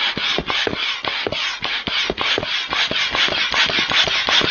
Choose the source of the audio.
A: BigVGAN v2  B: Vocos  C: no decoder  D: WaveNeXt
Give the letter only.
C